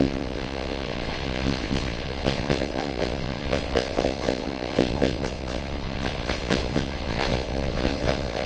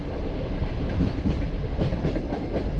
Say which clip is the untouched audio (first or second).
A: second